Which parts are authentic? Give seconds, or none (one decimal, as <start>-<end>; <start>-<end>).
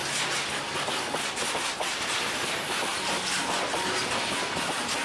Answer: 0.0-1.9; 2.9-5.0